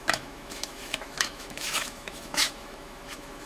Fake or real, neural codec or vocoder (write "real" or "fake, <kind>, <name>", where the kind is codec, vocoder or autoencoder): fake, autoencoder, DAC-VAE